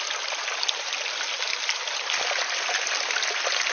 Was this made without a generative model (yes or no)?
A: yes